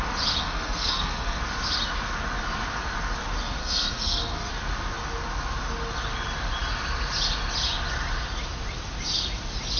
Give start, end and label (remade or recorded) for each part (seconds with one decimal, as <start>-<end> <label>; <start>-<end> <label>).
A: 0.0-0.4 recorded; 0.4-1.4 remade; 1.4-3.6 recorded; 3.6-4.5 remade; 4.5-9.8 recorded